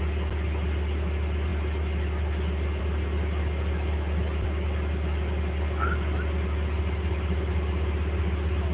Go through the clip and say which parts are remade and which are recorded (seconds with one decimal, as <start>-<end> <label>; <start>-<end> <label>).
0.0-8.7 recorded